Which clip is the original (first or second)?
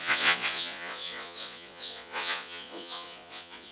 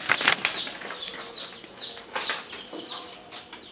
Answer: second